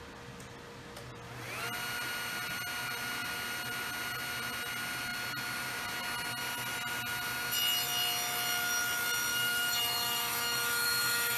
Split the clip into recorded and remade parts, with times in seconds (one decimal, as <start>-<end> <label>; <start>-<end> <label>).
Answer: 0.0-9.3 recorded; 9.3-11.4 remade